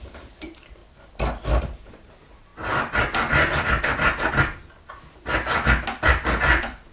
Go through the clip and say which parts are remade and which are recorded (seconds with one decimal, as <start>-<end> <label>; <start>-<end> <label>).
0.0-0.8 remade; 0.8-1.6 recorded; 1.6-2.5 remade; 2.5-6.9 recorded